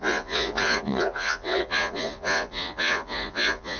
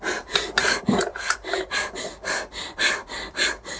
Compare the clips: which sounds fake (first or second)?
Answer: first